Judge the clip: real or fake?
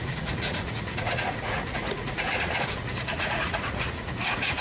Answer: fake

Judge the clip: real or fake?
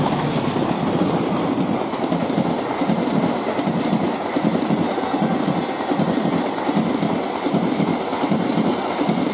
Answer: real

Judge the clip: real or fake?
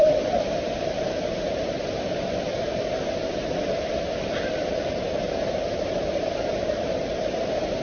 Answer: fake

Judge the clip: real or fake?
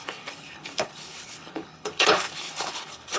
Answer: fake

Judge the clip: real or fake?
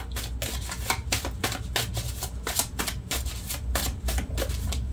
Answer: real